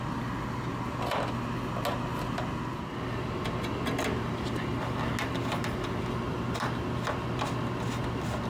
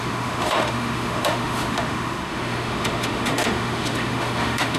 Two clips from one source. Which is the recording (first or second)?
first